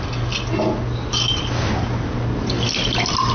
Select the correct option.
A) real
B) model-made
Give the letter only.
A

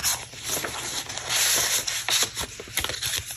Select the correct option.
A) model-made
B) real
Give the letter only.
B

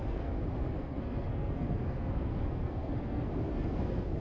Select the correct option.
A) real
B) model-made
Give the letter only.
B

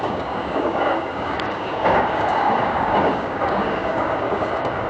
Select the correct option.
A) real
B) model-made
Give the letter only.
B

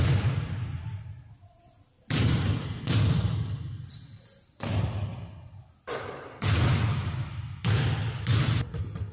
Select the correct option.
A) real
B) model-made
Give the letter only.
A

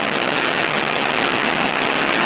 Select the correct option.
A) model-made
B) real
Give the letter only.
A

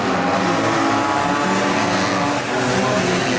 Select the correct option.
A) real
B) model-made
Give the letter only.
A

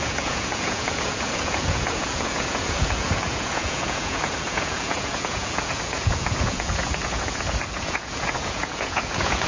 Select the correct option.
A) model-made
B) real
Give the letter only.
A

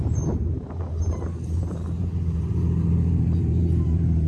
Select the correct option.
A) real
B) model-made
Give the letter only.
B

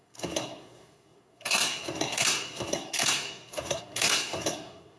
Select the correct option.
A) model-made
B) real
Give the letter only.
A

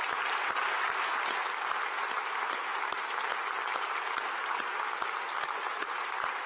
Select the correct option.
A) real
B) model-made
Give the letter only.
A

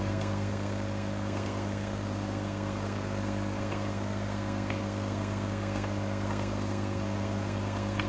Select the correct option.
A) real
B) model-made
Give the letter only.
B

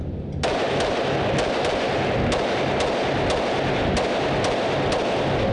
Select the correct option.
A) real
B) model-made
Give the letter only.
A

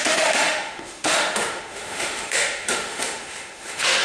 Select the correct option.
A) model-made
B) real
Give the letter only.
A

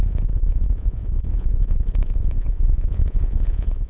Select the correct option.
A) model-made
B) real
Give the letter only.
A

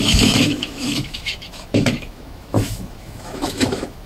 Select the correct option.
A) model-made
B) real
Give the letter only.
A